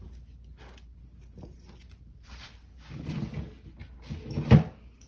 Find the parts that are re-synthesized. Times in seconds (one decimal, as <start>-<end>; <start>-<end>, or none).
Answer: none